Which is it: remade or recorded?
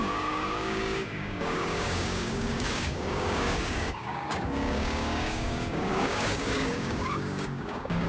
remade